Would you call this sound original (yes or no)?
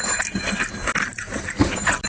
yes